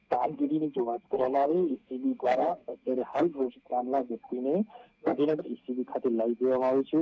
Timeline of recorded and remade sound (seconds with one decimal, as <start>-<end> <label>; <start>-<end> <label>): 0.0-4.2 remade; 4.2-4.8 recorded; 4.8-5.4 remade; 5.4-7.0 recorded